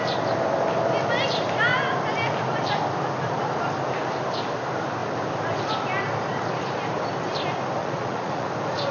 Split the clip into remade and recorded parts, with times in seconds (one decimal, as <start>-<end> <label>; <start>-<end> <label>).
0.0-7.8 recorded; 7.8-8.5 remade; 8.5-8.9 recorded